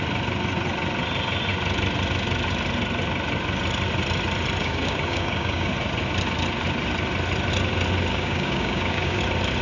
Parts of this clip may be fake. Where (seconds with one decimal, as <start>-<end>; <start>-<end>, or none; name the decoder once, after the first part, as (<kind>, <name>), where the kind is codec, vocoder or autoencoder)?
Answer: 4.6-5.7 (codec, DAC); 8.1-9.2

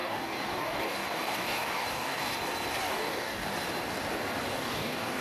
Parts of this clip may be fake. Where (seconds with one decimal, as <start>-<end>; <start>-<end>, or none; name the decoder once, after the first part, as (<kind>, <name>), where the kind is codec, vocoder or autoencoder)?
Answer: 0.0-2.3 (codec, DAC); 2.8-3.5; 4.5-5.2

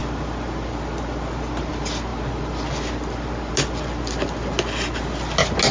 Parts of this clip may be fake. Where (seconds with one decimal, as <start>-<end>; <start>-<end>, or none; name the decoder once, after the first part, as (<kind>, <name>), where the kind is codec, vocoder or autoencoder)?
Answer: none

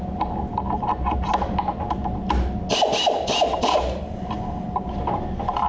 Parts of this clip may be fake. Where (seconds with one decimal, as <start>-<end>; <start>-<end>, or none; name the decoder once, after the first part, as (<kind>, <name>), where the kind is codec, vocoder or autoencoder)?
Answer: none

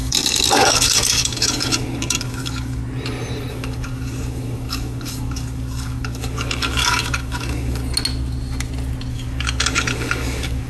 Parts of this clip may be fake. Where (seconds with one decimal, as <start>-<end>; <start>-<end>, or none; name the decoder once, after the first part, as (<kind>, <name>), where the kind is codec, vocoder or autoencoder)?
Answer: 0.0-2.8 (codec, DAC); 3.5-7.8; 9.1-10.7

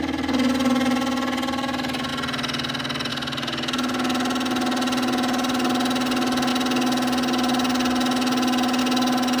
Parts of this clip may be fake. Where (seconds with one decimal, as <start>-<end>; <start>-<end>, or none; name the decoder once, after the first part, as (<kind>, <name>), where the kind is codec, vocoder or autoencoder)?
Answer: none